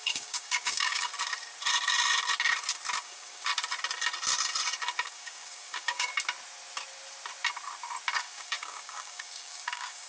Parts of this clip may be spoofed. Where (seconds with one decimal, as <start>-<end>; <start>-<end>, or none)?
0.0-1.1; 3.0-3.5; 5.0-6.1; 8.2-10.1